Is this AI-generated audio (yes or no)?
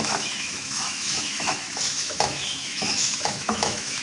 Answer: yes